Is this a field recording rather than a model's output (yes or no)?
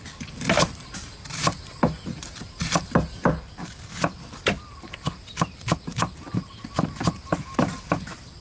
yes